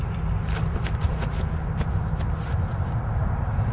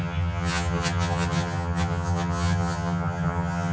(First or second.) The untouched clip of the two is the first